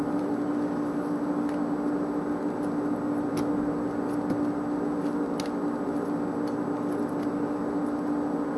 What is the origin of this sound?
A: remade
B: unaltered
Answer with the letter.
B